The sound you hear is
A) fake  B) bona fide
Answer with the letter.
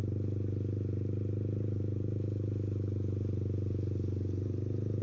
B